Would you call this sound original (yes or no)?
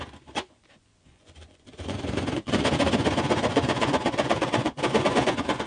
no